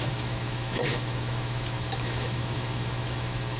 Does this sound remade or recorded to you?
remade